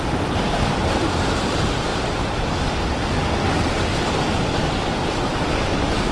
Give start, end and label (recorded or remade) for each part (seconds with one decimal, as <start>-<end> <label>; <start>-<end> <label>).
0.0-6.1 recorded